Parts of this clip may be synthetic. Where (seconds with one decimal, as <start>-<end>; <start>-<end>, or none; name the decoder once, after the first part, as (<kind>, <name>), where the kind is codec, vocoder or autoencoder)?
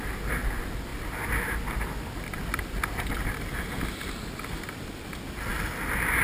none